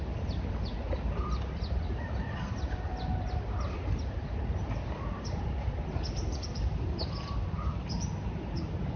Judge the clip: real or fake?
real